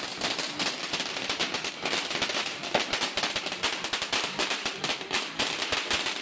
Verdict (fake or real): fake